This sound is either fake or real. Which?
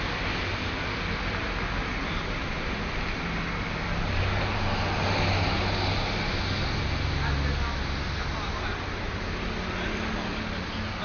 real